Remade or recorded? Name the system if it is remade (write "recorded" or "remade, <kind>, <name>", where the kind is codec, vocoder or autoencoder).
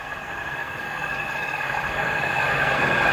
remade, codec, SNAC